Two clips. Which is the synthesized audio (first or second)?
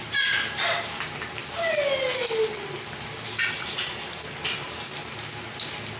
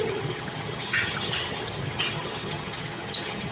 second